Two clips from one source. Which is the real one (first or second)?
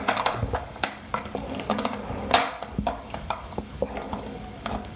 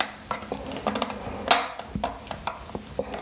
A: second